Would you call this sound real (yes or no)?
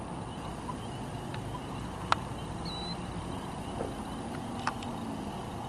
yes